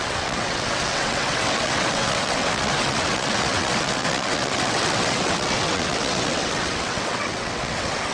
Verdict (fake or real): fake